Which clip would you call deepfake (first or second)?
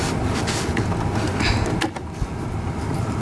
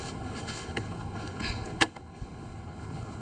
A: second